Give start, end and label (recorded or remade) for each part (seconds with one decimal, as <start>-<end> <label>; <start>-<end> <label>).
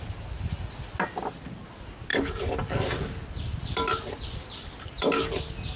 0.0-5.8 recorded